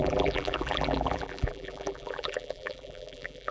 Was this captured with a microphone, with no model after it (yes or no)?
no